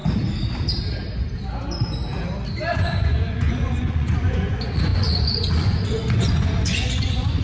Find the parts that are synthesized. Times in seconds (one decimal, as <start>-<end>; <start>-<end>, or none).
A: 2.7-7.4